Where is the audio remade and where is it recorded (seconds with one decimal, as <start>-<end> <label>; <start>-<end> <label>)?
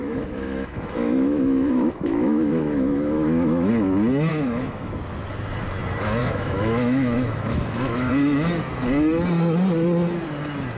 0.0-3.7 remade; 3.7-4.3 recorded; 4.3-4.9 remade; 4.9-6.2 recorded; 6.2-8.1 remade; 8.1-10.8 recorded